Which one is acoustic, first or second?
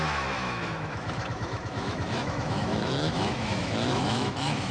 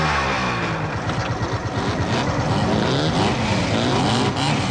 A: second